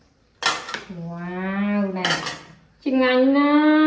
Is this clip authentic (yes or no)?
yes